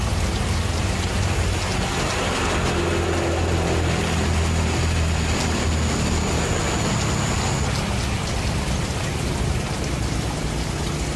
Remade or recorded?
recorded